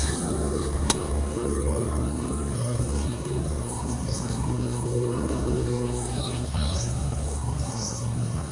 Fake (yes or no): yes